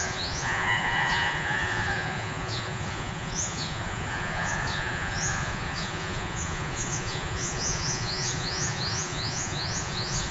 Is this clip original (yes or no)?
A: no